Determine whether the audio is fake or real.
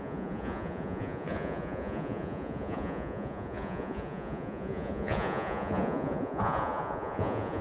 fake